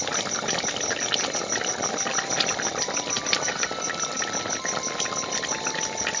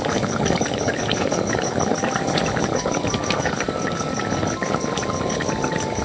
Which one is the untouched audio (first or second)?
first